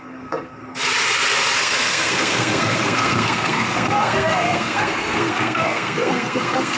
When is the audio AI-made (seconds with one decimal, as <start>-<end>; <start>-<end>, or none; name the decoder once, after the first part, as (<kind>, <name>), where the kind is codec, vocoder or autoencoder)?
0.0-0.6 (codec, SNAC); 1.6-6.8